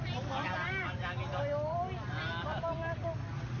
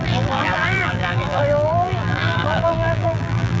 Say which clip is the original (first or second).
first